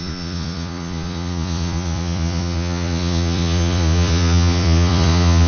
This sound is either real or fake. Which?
fake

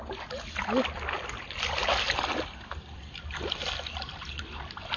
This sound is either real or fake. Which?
real